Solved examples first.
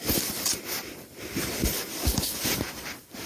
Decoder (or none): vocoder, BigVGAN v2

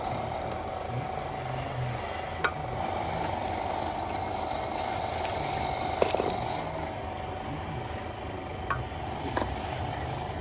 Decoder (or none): none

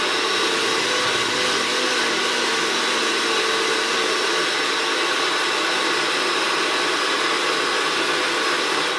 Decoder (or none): none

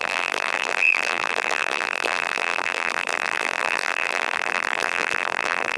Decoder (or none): vocoder, BigVGAN v2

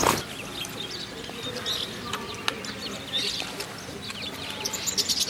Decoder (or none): none